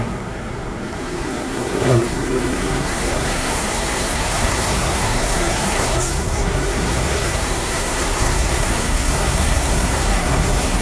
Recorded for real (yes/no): no